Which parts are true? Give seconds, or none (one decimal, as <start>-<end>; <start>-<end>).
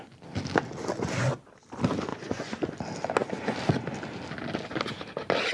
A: 0.0-2.1; 2.7-5.5